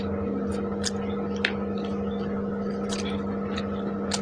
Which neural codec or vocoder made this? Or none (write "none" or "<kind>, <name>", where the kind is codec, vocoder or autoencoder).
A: none